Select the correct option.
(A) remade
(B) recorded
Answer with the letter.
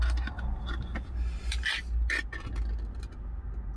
B